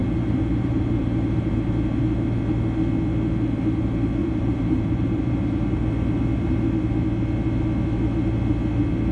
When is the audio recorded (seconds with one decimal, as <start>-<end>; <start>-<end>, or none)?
1.5-4.2; 5.8-9.1